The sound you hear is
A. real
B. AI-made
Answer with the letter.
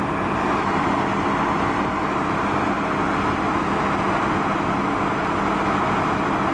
A